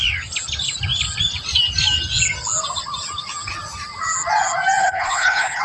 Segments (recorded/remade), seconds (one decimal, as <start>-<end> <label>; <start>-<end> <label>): 0.0-4.8 recorded; 4.8-5.6 remade